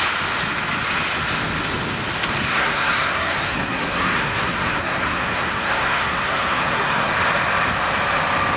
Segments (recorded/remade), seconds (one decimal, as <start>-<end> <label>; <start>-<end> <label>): 0.0-2.4 recorded; 2.4-7.1 remade; 7.1-8.6 recorded